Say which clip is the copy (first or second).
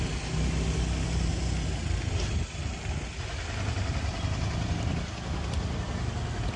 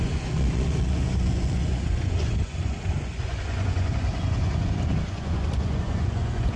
second